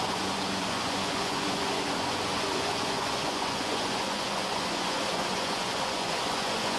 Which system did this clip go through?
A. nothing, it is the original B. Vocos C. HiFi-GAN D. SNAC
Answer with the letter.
B